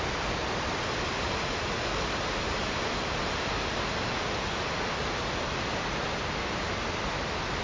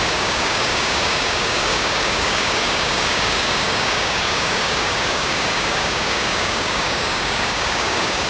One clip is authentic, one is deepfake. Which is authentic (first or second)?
first